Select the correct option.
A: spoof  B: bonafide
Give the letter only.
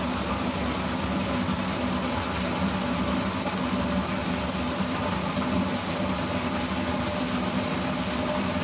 B